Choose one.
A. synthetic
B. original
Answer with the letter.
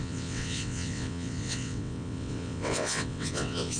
A